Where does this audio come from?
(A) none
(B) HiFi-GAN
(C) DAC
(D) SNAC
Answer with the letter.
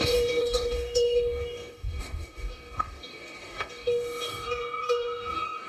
C